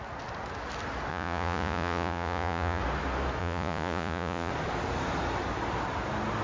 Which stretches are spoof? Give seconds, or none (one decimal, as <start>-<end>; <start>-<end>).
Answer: 1.1-2.8; 3.4-4.5